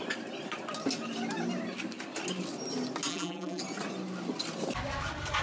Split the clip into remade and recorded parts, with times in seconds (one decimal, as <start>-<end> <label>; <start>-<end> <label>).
0.0-3.1 recorded; 3.1-3.6 remade; 3.6-5.4 recorded